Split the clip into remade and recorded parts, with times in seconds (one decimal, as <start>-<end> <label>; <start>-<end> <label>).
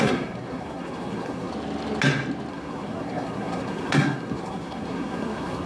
0.0-1.5 remade; 1.5-2.5 recorded; 2.5-5.7 remade